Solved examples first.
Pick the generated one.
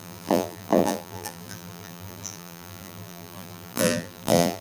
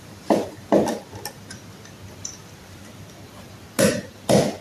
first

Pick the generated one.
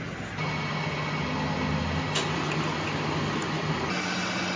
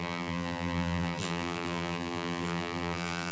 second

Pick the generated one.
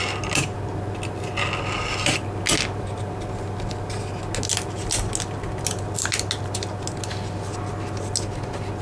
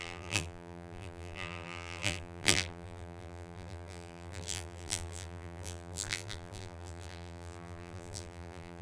second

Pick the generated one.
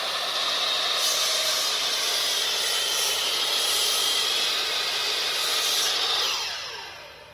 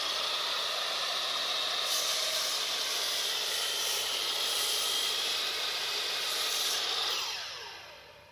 second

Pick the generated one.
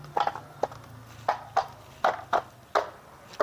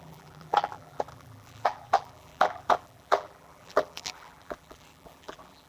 second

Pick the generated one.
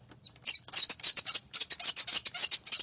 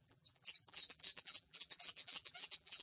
second